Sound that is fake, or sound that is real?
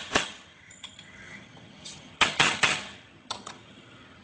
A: fake